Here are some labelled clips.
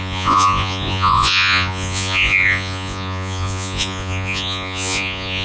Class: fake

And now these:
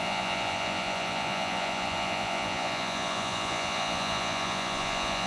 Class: fake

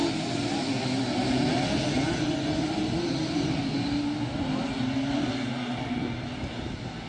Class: real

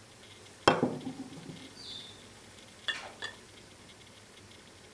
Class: real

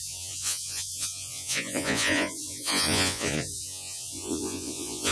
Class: fake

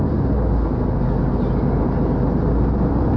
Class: real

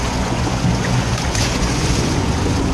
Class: fake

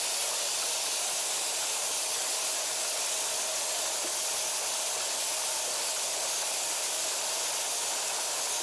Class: real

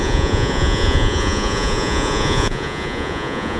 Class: fake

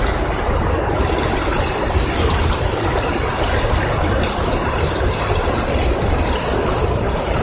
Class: real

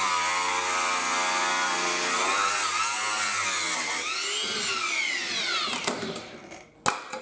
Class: real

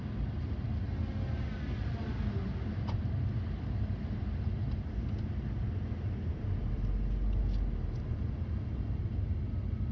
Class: real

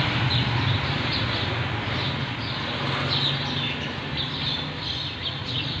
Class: real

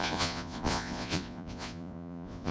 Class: fake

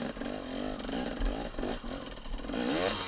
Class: real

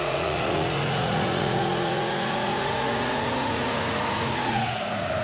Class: fake